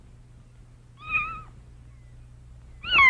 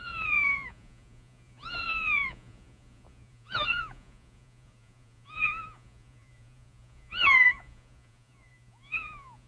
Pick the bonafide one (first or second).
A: first